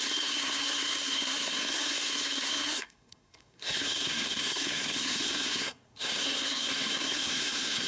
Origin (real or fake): fake